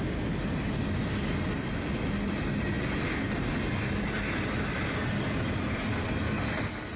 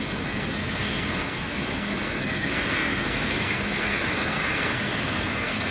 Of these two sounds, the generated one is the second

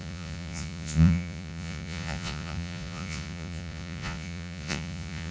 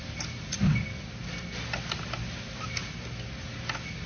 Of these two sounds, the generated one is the first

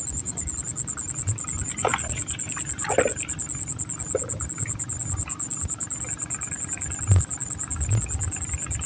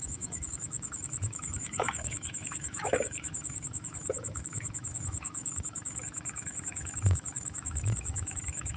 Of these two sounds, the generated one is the second